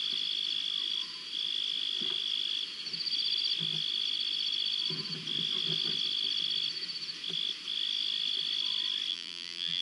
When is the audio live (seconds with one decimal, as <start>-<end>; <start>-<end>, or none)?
0.0-9.1